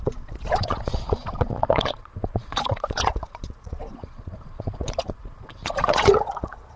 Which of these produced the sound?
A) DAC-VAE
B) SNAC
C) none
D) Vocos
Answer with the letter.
D